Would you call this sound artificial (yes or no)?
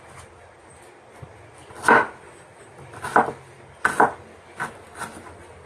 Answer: no